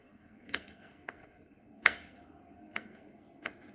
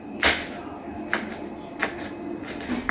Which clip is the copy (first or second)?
first